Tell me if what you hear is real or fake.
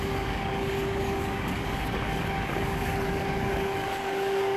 fake